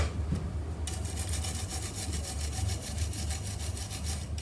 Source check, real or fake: real